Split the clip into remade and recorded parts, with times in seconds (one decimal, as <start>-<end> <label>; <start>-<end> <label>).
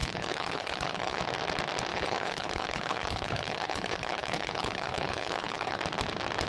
0.0-1.2 remade; 1.2-1.9 recorded; 1.9-5.8 remade; 5.8-6.5 recorded